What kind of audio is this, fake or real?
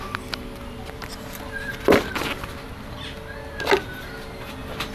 real